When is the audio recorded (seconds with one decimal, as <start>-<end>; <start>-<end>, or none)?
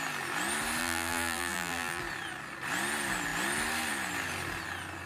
0.0-0.8; 2.0-5.1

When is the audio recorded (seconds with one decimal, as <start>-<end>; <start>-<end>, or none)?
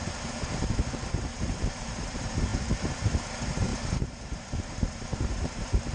none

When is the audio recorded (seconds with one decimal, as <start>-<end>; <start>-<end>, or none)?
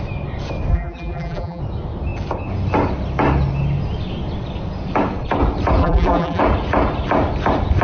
0.0-0.7; 1.6-5.8; 6.4-7.8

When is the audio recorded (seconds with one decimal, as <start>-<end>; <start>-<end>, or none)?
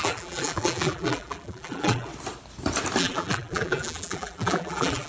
2.1-3.0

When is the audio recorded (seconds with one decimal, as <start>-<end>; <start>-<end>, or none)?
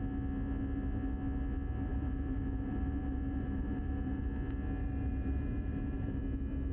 0.0-1.9; 4.2-4.8; 6.2-6.7